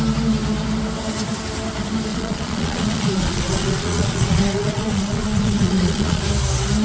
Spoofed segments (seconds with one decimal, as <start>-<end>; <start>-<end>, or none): 2.1-6.2